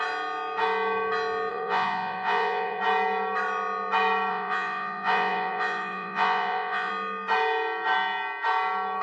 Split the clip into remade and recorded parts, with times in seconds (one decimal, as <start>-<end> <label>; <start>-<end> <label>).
0.0-1.5 recorded; 1.5-2.8 remade; 2.8-4.3 recorded; 4.3-6.9 remade; 6.9-9.0 recorded